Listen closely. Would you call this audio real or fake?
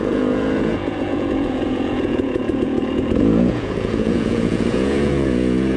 fake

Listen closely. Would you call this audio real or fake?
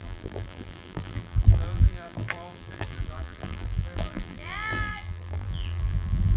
fake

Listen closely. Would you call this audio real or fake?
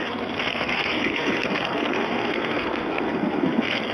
fake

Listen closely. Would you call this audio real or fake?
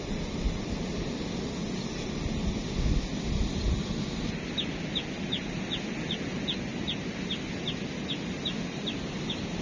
real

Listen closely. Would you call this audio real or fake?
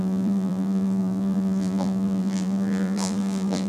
fake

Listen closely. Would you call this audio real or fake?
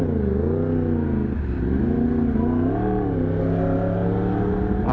real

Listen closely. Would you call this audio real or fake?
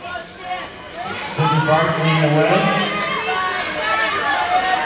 real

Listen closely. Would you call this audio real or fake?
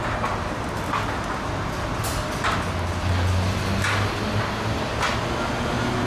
real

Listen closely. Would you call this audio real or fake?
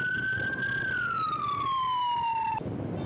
real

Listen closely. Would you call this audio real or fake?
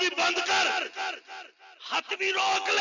real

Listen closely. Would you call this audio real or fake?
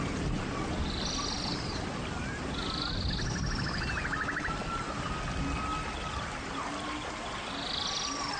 real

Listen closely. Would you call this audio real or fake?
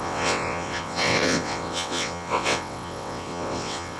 fake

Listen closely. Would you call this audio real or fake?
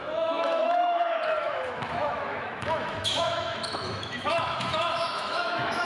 fake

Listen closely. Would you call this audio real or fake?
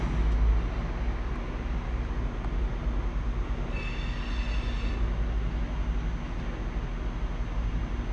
real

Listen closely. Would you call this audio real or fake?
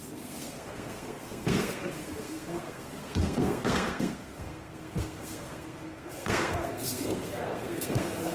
fake